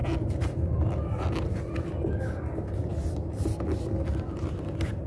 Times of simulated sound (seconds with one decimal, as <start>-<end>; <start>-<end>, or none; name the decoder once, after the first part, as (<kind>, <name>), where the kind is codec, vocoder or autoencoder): none